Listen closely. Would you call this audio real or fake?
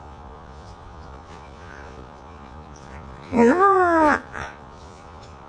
fake